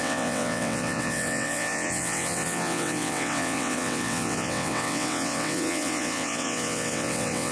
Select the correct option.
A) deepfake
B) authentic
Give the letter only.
A